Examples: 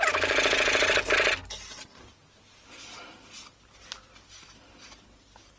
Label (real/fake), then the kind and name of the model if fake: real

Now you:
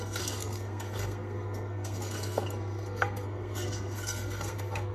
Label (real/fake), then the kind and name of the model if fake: fake, codec, SNAC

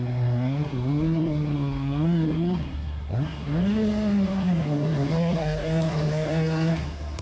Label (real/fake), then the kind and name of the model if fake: fake, codec, SNAC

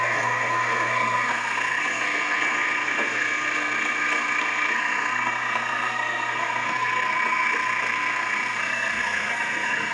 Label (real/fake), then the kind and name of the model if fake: fake, codec, SNAC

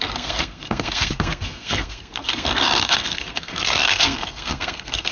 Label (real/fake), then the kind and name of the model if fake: fake, codec, SNAC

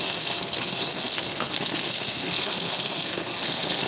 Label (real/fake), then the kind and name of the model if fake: fake, codec, SNAC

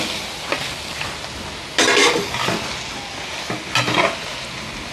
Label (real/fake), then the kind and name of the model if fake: real